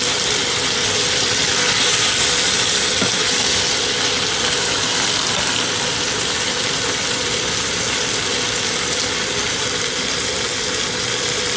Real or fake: real